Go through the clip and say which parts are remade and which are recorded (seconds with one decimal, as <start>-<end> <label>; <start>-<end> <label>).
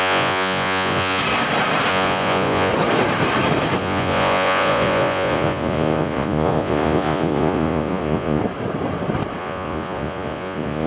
0.0-1.2 remade; 1.2-1.9 recorded; 1.9-2.7 remade; 2.7-3.8 recorded; 3.8-8.4 remade; 8.4-9.4 recorded; 9.4-10.9 remade